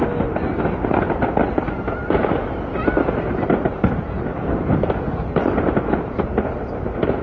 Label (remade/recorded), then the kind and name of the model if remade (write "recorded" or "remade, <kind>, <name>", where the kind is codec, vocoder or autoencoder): recorded